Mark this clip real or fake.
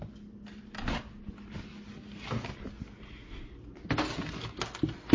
real